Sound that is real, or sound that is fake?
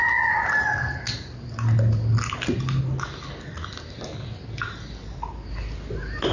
real